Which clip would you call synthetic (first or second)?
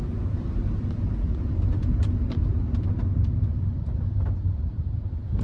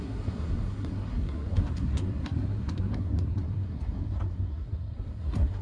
second